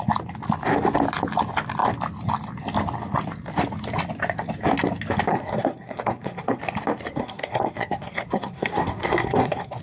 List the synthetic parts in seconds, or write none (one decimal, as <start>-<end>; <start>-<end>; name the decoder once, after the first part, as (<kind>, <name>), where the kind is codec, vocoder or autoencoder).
5.3-6.6 (codec, SNAC); 7.1-9.8